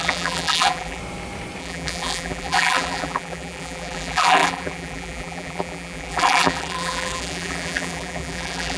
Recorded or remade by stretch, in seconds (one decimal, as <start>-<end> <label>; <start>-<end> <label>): 0.0-1.0 remade; 1.0-1.6 recorded; 1.6-8.8 remade